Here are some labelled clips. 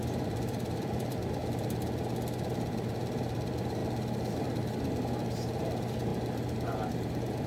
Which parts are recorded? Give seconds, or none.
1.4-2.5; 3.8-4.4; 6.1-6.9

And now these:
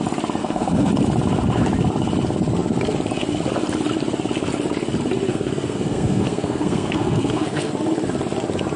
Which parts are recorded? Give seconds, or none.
0.0-0.4; 0.9-5.3; 7.7-8.8

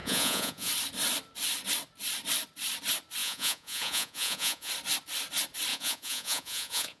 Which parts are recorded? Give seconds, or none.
0.7-3.2; 4.7-5.7

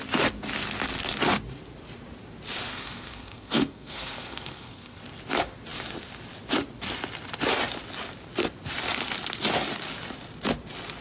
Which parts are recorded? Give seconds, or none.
0.0-2.7; 5.0-11.0

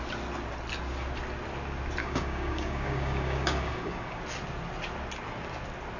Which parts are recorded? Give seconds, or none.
0.0-2.0; 4.2-6.0

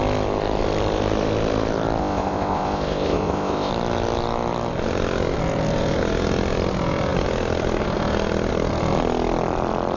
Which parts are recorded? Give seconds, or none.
0.0-2.0; 3.7-10.0

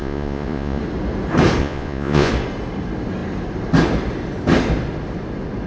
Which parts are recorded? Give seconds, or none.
0.8-1.6; 2.3-5.7

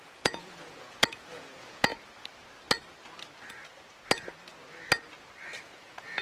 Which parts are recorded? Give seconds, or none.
1.9-5.6